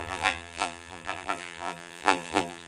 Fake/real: fake